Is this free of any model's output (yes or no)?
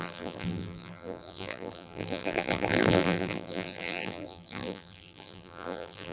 no